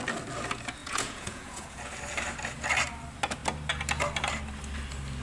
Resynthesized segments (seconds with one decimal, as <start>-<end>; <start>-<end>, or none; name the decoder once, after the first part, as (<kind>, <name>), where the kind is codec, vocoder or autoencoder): 0.8-1.8 (vocoder, Vocos)

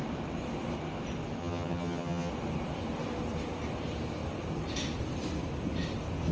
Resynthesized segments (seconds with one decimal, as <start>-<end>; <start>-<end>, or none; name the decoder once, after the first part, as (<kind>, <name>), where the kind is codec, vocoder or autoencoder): 1.4-2.3 (vocoder, HiFi-GAN)

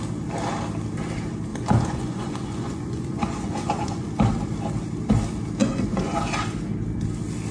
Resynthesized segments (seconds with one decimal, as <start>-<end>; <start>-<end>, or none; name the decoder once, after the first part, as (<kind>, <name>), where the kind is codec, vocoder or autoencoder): 1.5-4.1 (vocoder, Vocos); 5.6-6.2

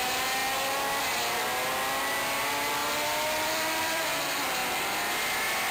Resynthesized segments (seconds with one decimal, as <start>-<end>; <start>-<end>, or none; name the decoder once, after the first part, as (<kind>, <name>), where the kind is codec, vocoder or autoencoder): 2.8-4.0 (vocoder, BigVGAN v2)

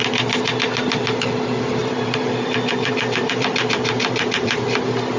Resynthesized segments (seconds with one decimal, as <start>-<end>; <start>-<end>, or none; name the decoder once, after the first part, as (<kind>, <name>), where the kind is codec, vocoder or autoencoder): 1.8-4.5 (vocoder, BigVGAN v2)

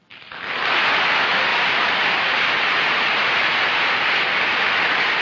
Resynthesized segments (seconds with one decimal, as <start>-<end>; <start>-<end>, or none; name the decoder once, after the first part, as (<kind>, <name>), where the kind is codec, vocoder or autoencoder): 1.5-3.2 (vocoder, BigVGAN v2)